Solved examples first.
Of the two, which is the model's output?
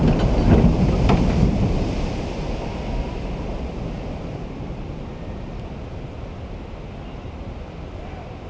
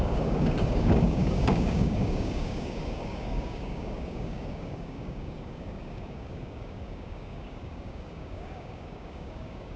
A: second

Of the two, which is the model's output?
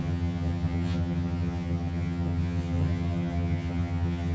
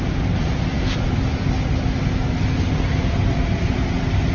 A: first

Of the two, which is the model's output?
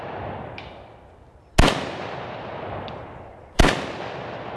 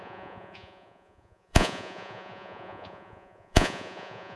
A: second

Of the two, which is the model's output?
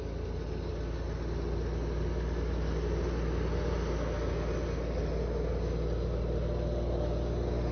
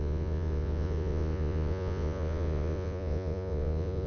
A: second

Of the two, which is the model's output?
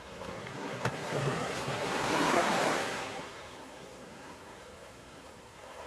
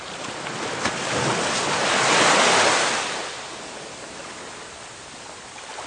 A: first